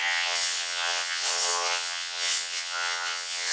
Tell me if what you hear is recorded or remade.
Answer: remade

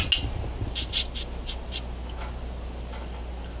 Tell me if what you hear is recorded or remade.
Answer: recorded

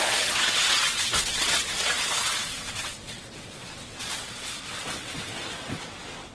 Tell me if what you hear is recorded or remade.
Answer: remade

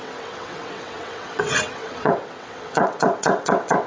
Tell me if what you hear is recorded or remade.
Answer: remade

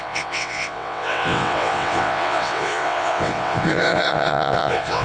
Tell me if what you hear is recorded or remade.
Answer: remade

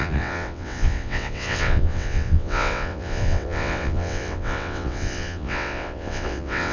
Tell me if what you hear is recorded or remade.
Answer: remade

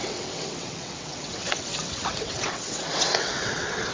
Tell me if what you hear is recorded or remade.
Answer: remade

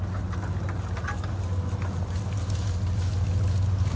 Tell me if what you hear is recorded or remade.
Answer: recorded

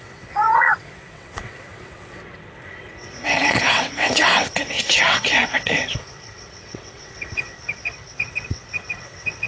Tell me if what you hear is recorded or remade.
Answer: remade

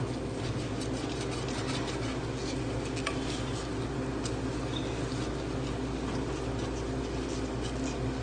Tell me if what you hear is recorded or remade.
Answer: recorded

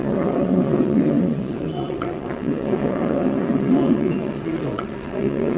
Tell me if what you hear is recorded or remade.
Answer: remade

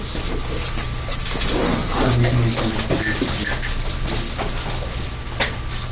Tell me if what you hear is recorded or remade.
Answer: recorded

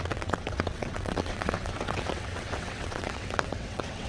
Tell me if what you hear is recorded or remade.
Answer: remade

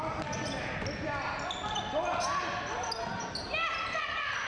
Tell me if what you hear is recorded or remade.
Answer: recorded